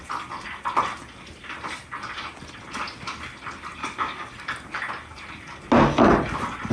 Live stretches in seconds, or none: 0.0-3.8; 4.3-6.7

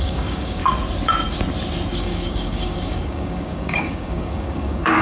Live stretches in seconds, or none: 0.6-2.0

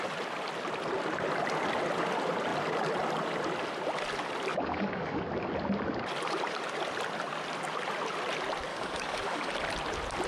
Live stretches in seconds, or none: 0.0-4.5; 5.2-8.7; 9.5-10.3

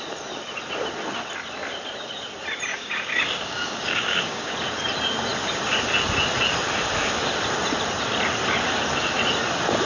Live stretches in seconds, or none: 0.0-2.7; 4.5-9.9

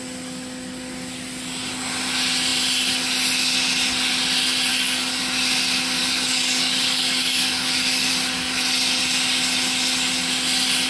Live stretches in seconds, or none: 0.0-4.7; 5.2-6.0; 8.1-10.9

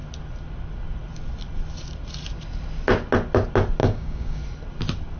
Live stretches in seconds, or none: 0.0-3.8; 4.4-5.2